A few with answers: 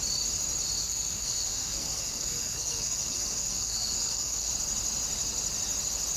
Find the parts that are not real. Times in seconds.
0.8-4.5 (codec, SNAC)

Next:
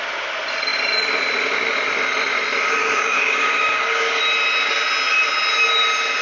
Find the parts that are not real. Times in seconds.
2.8-4.2 (codec, DAC)

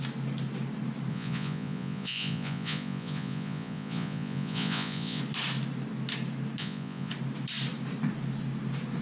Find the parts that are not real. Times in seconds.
1.1-5.2 (vocoder, Vocos); 6.6-7.1

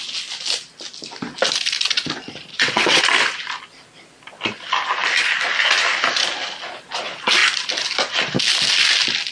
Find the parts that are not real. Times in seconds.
2.5-3.0 (vocoder, WaveNeXt)

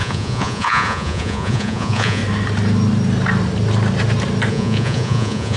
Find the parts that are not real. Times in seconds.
0.0-2.2 (vocoder, Vocos); 4.5-5.6

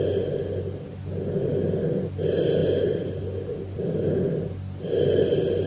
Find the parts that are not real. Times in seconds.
none

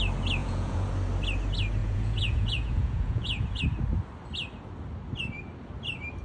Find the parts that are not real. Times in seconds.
0.4-0.9 (vocoder, Vocos); 1.8-3.6

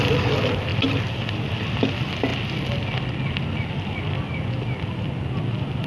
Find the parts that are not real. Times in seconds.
none